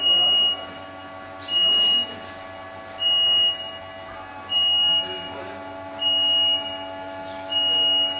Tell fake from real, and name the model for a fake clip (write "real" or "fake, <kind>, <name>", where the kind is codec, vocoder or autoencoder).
real